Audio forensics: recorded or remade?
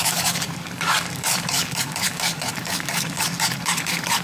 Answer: remade